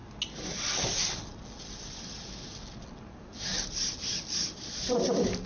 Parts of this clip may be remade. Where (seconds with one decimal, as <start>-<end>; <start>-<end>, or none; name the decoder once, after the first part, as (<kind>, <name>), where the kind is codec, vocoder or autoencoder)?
none

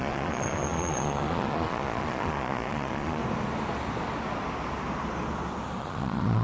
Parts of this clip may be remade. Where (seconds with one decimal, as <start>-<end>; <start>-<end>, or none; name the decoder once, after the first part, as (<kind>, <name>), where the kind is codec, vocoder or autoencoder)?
0.0-3.2 (vocoder, Vocos); 5.8-6.4

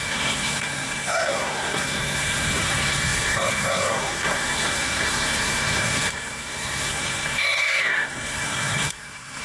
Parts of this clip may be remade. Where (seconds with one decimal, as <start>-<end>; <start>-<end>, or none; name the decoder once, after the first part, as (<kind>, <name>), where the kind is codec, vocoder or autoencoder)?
0.0-9.4 (codec, SNAC)

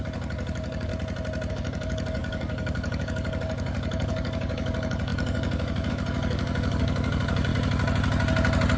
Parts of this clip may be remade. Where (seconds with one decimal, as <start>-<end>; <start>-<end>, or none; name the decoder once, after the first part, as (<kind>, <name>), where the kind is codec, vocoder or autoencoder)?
0.0-0.9 (codec, DAC); 1.5-7.5

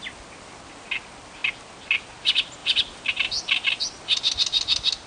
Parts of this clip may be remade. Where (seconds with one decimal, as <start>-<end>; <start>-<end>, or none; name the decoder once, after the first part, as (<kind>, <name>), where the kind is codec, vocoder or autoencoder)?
none

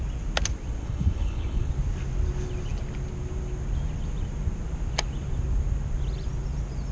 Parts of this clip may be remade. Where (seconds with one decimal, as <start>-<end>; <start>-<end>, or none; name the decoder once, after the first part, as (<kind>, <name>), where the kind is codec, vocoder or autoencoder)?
0.8-1.7 (codec, HILCodec)